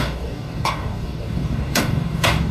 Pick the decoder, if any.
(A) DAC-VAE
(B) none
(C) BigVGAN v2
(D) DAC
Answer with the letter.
D